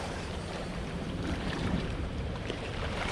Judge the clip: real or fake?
fake